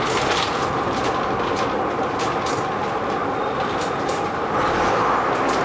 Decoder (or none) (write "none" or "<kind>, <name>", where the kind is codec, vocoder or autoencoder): none